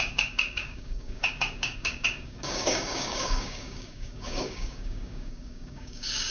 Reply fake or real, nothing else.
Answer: fake